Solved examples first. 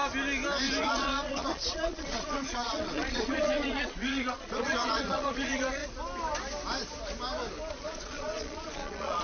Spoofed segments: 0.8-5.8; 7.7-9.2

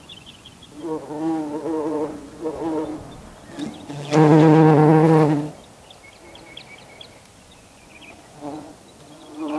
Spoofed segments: 0.0-2.9; 7.3-9.6